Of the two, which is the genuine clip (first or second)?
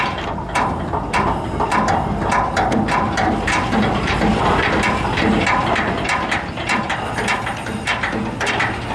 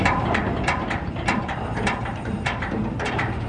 first